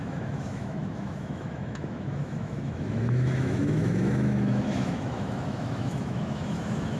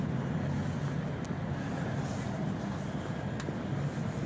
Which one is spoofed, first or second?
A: first